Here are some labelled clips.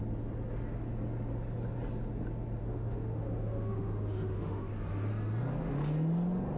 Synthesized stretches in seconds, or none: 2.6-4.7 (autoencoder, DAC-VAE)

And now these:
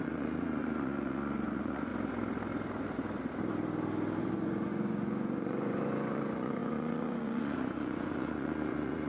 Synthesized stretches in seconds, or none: 0.0-1.9 (vocoder, Vocos); 4.2-9.1

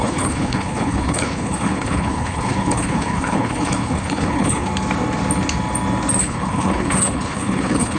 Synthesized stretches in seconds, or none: 0.0-4.7 (codec, HILCodec); 6.2-8.0

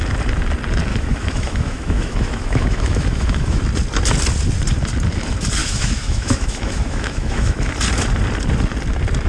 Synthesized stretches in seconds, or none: 0.9-3.6 (autoencoder, DAC-VAE); 5.6-7.7

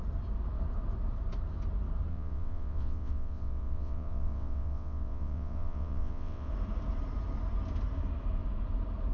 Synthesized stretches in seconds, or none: 2.1-6.5 (vocoder, WaveNeXt)

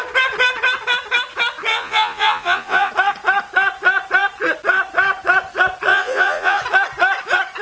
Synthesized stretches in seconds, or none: 1.7-2.9 (vocoder, Vocos); 5.9-6.6

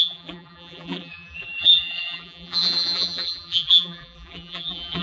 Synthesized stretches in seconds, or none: 0.0-5.0 (vocoder, BigVGAN v2)

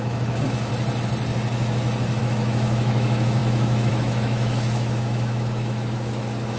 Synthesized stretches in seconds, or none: 0.0-0.7 (autoencoder, DAC-VAE); 2.2-6.6